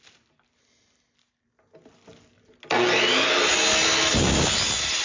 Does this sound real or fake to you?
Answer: real